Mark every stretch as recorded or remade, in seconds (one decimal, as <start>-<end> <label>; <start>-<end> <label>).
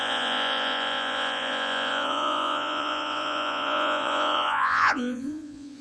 0.0-5.8 remade